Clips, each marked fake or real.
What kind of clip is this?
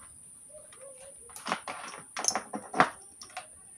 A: real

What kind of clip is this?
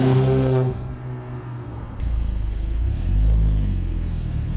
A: fake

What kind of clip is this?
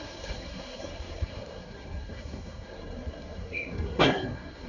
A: fake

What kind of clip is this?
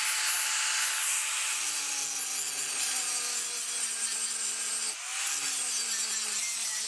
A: real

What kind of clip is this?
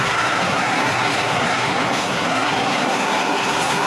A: fake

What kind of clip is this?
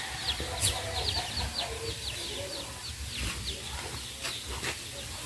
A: real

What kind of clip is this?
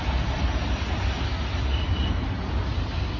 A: real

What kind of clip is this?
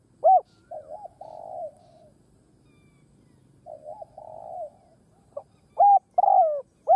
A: real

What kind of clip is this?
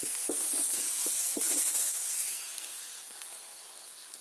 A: fake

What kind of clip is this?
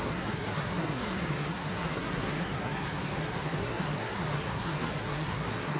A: fake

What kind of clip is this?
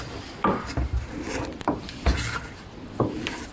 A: real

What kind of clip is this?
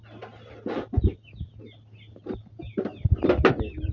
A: real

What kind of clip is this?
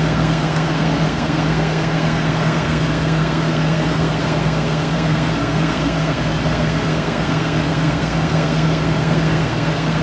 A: fake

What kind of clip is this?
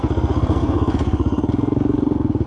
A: fake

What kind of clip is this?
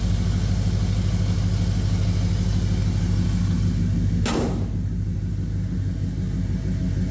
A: real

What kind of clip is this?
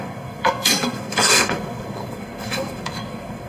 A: fake